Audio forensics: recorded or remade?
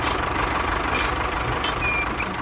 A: recorded